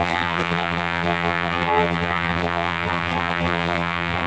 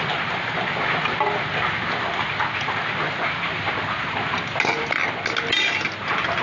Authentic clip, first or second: second